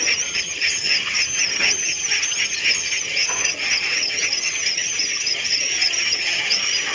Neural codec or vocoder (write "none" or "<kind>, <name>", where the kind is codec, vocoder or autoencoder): vocoder, HiFi-GAN